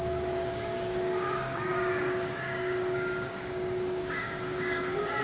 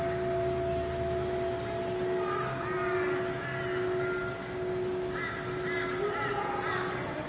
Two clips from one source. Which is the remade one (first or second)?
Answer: first